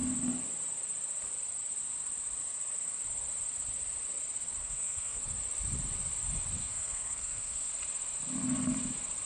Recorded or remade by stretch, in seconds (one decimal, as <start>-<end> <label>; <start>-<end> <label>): 0.0-4.6 recorded; 4.6-5.2 remade; 5.2-6.6 recorded; 6.6-7.7 remade; 7.7-9.3 recorded